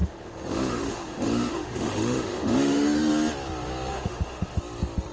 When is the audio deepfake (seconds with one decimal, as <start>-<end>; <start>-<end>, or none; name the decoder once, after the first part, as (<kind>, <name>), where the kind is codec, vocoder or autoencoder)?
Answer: 0.0-3.1 (autoencoder, DAC-VAE); 3.9-4.6